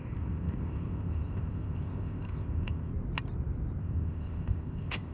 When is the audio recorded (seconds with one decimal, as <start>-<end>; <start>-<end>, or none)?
2.9-3.8